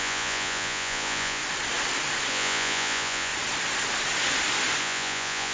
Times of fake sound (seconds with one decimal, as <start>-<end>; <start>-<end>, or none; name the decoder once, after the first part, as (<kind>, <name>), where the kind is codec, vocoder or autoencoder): 0.0-1.4 (vocoder, Vocos); 2.3-3.3; 4.8-5.5